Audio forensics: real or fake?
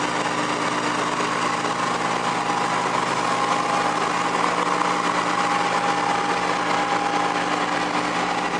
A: real